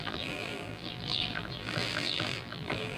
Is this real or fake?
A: fake